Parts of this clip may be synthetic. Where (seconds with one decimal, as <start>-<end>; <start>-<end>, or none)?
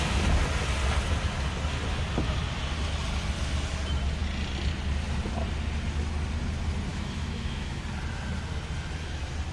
6.9-7.8